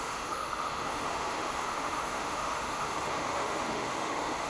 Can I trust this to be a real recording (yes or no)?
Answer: no